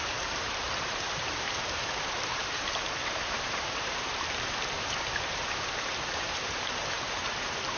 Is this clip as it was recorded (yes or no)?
no